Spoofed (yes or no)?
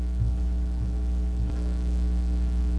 yes